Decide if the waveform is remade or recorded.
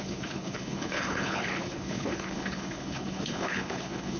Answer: remade